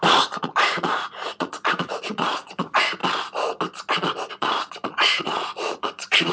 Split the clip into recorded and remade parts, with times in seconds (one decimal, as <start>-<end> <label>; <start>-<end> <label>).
0.0-3.0 remade; 3.0-4.3 recorded; 4.3-6.3 remade